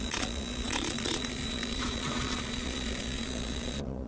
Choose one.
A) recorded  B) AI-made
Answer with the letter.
B